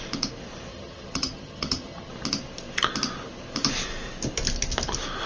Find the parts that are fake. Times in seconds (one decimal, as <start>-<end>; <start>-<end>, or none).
0.7-2.1